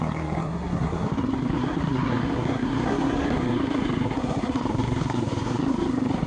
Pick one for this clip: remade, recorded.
remade